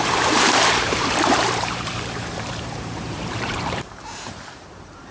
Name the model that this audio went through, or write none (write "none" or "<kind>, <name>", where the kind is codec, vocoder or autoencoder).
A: vocoder, BigVGAN v2